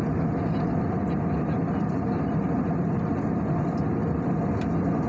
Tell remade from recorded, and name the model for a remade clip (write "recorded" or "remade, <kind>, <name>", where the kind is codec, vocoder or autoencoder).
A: recorded